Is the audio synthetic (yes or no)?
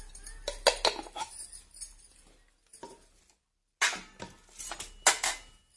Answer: no